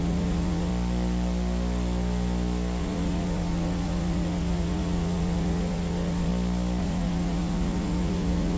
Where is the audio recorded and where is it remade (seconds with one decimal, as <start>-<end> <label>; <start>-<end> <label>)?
0.0-0.7 remade; 0.7-2.8 recorded; 2.8-6.3 remade; 6.3-6.8 recorded; 6.8-8.6 remade